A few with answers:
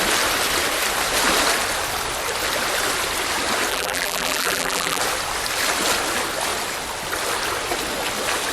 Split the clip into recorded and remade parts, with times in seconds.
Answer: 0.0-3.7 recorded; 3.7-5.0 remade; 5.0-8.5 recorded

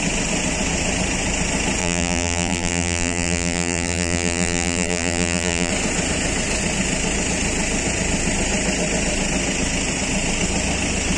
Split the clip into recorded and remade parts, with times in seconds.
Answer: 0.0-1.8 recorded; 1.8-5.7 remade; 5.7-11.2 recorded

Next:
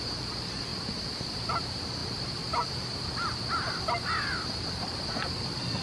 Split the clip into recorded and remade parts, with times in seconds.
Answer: 0.0-5.8 recorded

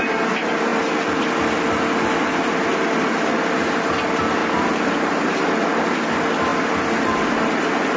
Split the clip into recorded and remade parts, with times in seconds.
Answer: 0.0-8.0 recorded

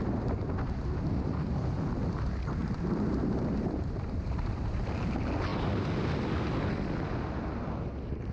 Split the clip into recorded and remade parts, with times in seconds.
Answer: 0.0-2.6 recorded; 2.6-4.8 remade; 4.8-8.3 recorded

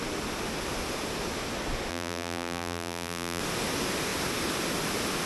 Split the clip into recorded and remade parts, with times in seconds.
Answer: 0.0-1.9 recorded; 1.9-3.4 remade; 3.4-5.3 recorded